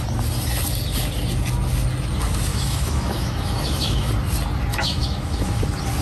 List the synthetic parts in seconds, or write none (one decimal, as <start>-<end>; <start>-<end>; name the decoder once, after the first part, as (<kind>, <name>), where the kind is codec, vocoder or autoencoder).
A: 2.5-4.1 (autoencoder, DAC-VAE); 4.7-5.6